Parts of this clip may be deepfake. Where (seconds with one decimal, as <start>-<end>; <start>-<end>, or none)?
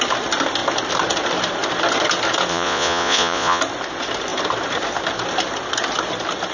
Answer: 2.5-3.6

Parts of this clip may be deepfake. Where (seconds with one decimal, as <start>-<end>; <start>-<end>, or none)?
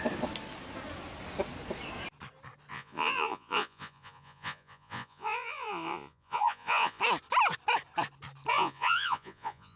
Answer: 2.7-7.0; 8.5-9.8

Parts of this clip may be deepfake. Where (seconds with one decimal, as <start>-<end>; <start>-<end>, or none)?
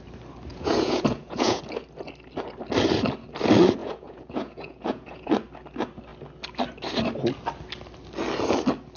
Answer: 0.5-1.6; 3.8-5.3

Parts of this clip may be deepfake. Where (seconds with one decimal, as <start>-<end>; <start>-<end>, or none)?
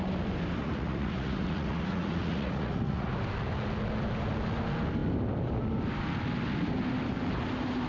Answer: 0.6-3.1